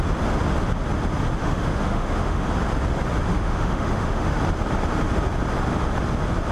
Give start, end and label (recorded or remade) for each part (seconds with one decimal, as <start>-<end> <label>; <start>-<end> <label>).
0.0-1.4 recorded; 1.4-2.5 remade; 2.5-3.3 recorded; 3.3-4.4 remade; 4.4-6.5 recorded